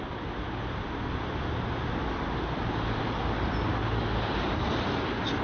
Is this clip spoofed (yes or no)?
no